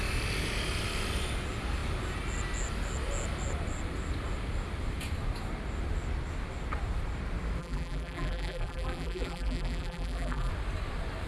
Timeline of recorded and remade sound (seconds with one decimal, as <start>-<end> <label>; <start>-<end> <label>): 0.0-7.6 recorded; 7.6-10.5 remade; 10.5-11.3 recorded